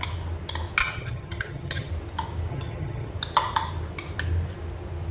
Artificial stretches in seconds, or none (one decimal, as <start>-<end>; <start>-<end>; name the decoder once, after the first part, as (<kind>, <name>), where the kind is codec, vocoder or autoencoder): 0.8-1.9 (vocoder, HiFi-GAN); 2.5-3.1